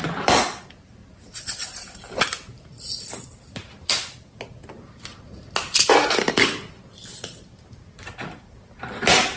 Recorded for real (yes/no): yes